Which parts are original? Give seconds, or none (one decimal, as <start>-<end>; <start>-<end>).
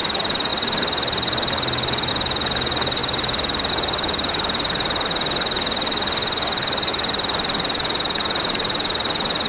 0.0-9.5